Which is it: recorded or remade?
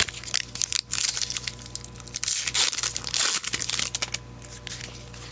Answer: recorded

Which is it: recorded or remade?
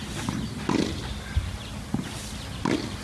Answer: recorded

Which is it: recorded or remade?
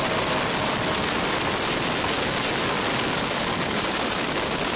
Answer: recorded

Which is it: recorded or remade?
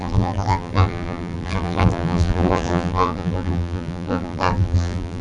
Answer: remade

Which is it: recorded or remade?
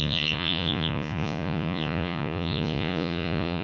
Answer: remade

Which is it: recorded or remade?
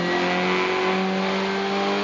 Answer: recorded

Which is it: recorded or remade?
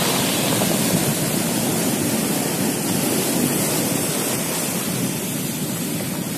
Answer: recorded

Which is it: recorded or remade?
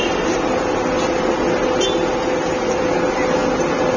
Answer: recorded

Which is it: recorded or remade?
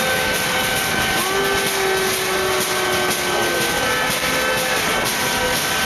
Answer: recorded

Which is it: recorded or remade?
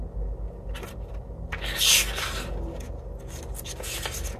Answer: recorded